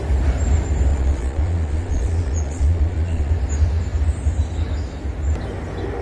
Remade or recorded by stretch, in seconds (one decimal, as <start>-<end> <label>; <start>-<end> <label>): 0.0-0.9 recorded; 0.9-3.3 remade; 3.3-6.0 recorded